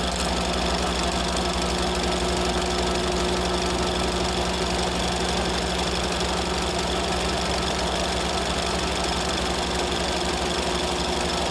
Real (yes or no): yes